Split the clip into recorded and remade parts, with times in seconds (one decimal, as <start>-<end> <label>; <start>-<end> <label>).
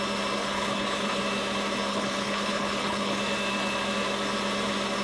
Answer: 0.0-0.4 recorded; 0.4-1.2 remade; 1.2-1.9 recorded; 1.9-3.2 remade; 3.2-5.0 recorded